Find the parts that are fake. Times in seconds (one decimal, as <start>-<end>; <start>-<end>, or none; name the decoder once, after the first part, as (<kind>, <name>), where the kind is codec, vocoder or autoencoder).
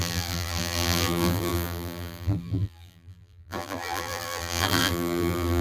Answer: 0.0-5.6 (vocoder, BigVGAN v2)